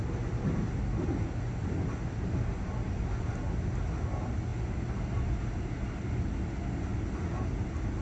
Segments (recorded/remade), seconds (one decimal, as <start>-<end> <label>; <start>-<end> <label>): 0.0-8.0 recorded